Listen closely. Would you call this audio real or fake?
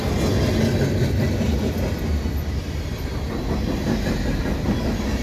real